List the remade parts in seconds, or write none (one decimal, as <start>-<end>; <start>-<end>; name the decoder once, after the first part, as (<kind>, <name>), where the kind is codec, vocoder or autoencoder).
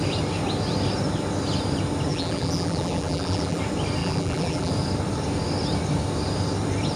2.1-3.6 (vocoder, BigVGAN v2); 4.0-4.7